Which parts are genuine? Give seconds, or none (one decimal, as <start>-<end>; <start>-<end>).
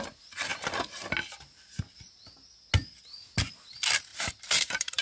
0.0-4.1